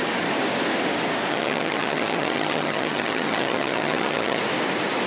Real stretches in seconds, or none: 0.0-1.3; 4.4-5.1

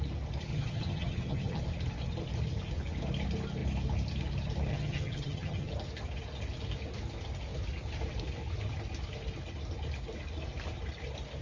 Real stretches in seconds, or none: 0.0-0.5; 1.6-4.7; 5.7-11.4